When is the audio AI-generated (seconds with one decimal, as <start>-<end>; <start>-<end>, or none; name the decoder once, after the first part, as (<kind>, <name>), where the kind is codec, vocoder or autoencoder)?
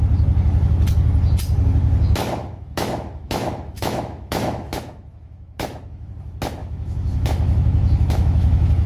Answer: 2.2-6.1 (autoencoder, DAC-VAE); 6.6-8.9